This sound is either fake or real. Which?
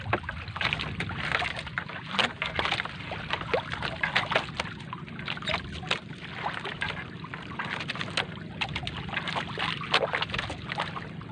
real